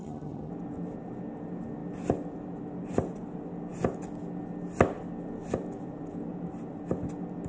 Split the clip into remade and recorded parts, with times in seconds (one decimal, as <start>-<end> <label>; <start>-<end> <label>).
0.0-0.5 remade; 0.5-7.5 recorded